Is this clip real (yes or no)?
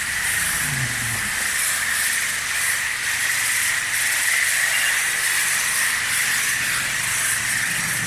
yes